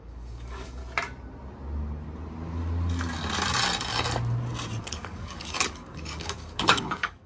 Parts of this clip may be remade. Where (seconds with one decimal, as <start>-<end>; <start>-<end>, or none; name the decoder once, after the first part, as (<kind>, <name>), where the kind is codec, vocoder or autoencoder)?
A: 0.0-0.8 (codec, DAC); 4.8-7.3